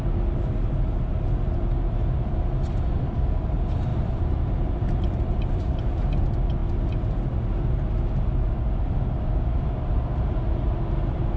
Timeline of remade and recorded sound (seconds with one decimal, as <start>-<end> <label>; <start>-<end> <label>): 0.0-3.9 recorded; 3.9-5.8 remade; 5.8-11.4 recorded